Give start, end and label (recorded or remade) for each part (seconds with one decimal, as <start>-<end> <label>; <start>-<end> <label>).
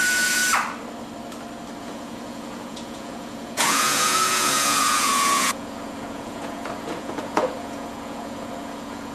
0.0-0.4 remade; 0.4-1.8 recorded; 1.8-9.1 remade